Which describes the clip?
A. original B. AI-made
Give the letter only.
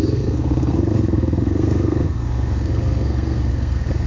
B